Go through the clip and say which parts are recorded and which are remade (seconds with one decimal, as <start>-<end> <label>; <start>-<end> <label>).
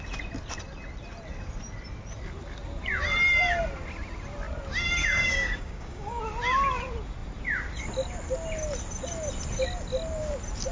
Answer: 0.0-5.0 recorded; 5.0-6.2 remade; 6.2-10.7 recorded